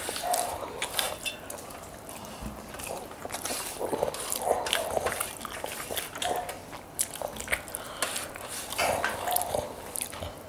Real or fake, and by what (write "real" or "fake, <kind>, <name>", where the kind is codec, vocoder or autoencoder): real